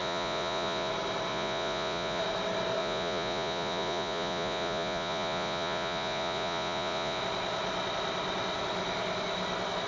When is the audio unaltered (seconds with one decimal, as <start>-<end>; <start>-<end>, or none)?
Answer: 0.9-1.3; 2.2-2.8; 7.2-9.9